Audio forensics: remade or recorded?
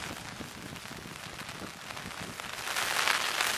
recorded